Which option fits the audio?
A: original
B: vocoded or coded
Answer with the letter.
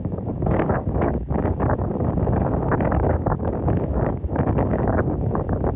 B